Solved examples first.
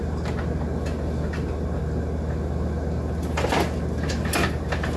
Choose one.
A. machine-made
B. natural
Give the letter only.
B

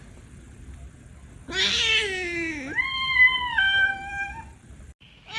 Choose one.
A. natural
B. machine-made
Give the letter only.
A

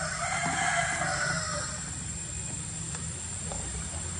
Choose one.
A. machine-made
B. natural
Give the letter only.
B